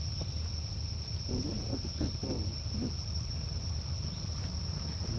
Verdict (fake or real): real